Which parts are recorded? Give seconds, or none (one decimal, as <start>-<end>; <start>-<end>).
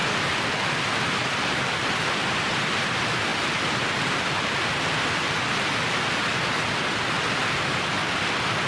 none